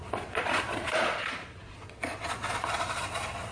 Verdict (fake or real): fake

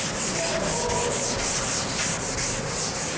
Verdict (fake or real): real